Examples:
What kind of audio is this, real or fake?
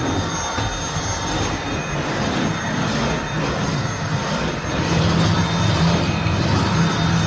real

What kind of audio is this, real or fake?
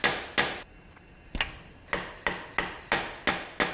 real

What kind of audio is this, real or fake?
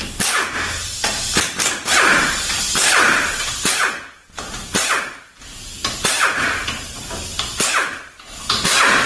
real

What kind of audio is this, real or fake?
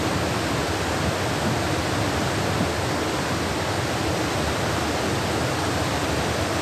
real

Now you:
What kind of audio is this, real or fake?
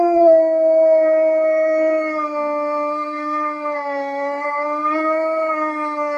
fake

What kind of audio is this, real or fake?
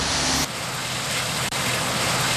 real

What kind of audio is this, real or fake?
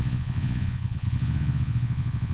fake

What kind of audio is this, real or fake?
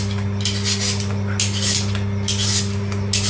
real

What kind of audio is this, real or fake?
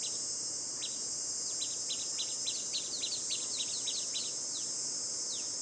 real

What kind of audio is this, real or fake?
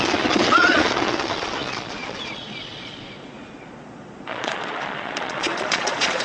fake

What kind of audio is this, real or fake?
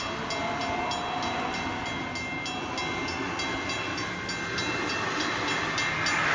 real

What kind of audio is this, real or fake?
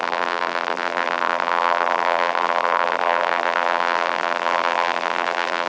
fake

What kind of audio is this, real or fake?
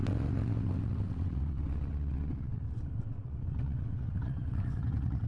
fake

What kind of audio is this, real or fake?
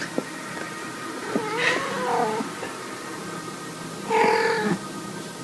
real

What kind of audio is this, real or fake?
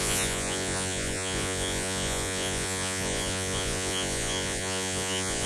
fake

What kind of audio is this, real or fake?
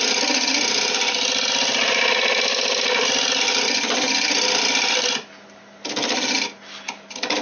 real